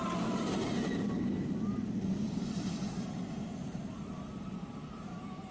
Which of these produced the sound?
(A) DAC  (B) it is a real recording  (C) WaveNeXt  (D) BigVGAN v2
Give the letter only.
D